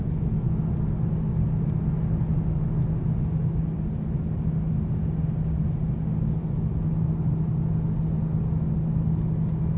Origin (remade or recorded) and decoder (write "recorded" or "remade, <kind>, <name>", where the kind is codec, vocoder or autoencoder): recorded